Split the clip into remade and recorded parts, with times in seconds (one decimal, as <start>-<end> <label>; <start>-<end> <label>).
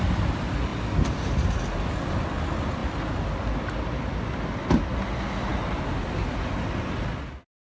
0.0-7.6 recorded